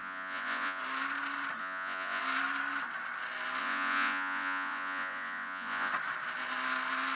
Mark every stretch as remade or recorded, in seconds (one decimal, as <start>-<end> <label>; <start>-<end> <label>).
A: 0.0-0.8 remade; 0.8-1.6 recorded; 1.6-2.2 remade; 2.2-3.6 recorded; 3.6-5.9 remade; 5.9-7.2 recorded